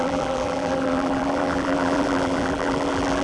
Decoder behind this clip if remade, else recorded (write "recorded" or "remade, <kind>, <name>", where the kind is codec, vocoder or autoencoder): remade, vocoder, BigVGAN v2